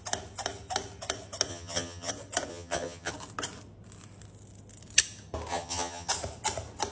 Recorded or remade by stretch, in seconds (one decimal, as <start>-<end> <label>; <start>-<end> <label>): 0.0-1.5 recorded; 1.5-2.1 remade; 2.1-2.5 recorded; 2.5-3.1 remade; 3.1-5.5 recorded; 5.5-6.1 remade; 6.1-6.9 recorded